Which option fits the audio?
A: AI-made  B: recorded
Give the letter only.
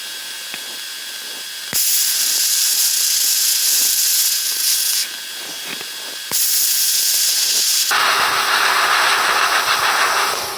B